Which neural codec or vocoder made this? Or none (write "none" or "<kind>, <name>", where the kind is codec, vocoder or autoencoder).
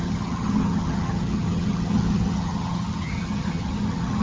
vocoder, HiFi-GAN